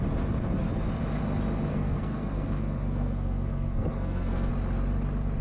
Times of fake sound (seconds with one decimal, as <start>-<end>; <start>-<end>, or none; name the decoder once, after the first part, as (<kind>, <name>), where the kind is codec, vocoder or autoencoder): 1.7-4.5 (codec, SNAC)